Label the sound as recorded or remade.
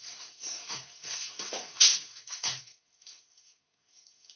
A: remade